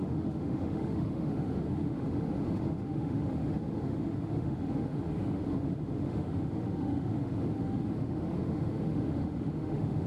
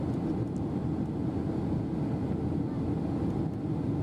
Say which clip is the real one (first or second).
second